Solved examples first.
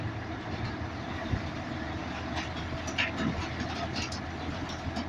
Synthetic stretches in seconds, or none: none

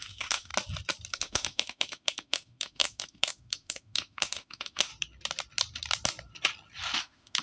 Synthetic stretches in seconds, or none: 0.0-0.5 (autoencoder, DAC-VAE); 1.1-4.9; 7.0-7.4

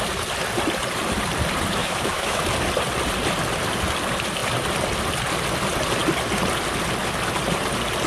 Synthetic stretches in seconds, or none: 1.8-2.4 (autoencoder, DAC-VAE)

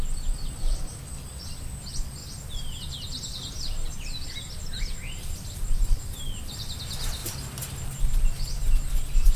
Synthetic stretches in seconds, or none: none